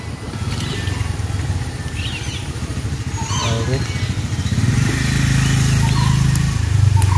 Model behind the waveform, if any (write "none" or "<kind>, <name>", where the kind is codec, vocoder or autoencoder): none